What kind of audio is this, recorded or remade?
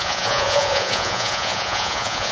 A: remade